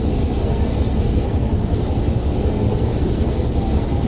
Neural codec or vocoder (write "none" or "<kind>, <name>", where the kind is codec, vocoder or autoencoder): codec, SNAC